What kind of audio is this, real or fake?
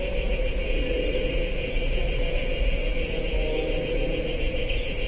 fake